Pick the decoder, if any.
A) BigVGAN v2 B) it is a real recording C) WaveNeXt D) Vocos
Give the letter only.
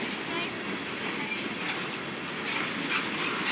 B